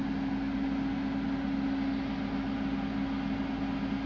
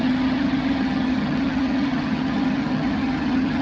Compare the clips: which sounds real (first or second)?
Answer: first